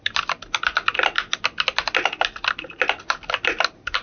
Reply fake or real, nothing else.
real